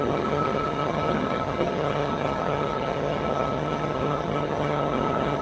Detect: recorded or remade remade